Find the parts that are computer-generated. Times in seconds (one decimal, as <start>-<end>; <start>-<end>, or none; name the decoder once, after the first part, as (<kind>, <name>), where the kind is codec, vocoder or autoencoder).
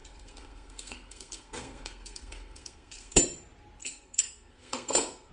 0.0-3.2 (codec, SNAC); 3.8-5.3